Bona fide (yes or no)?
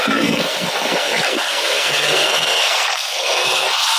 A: no